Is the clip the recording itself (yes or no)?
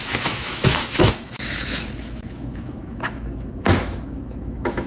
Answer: no